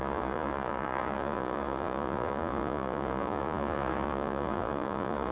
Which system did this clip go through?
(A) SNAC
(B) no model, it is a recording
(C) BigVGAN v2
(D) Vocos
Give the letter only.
D